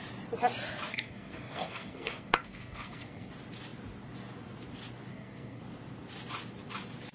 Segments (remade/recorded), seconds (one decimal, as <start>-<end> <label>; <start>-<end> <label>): 0.0-0.9 recorded; 0.9-3.3 remade; 3.3-5.1 recorded; 5.1-5.6 remade; 5.6-7.1 recorded

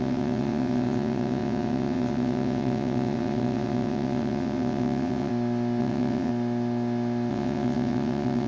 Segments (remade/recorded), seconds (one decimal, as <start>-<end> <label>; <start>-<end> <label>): 0.0-5.3 remade; 5.3-5.8 recorded; 5.8-6.3 remade; 6.3-7.3 recorded; 7.3-8.5 remade

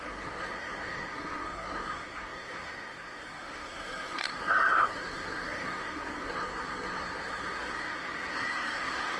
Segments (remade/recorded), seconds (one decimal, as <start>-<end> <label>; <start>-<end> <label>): 0.0-9.2 remade